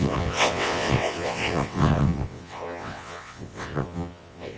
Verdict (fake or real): fake